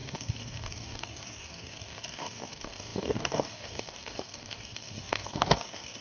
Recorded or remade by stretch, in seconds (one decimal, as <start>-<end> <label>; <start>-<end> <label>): 0.0-6.0 remade